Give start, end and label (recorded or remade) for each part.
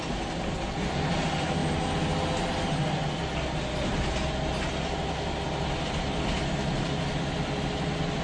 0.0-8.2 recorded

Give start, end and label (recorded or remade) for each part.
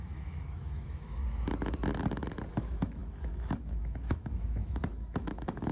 0.0-1.2 remade; 1.2-2.5 recorded; 2.5-5.7 remade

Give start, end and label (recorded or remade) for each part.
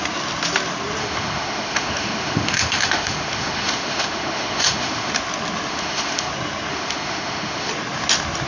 0.0-1.0 recorded; 1.0-5.1 remade; 5.1-5.7 recorded; 5.7-6.3 remade; 6.3-6.7 recorded; 6.7-7.7 remade; 7.7-8.5 recorded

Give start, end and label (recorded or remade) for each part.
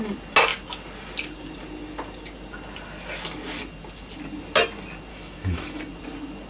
0.0-5.1 recorded; 5.1-5.8 remade; 5.8-6.5 recorded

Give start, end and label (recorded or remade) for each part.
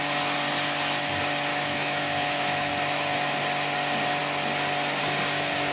0.0-1.5 recorded; 1.5-2.7 remade; 2.7-5.7 recorded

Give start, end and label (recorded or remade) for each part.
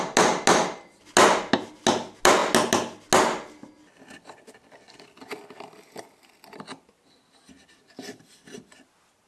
0.0-9.3 recorded